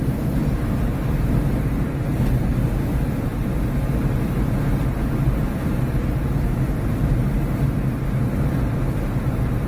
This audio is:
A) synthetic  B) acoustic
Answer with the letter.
B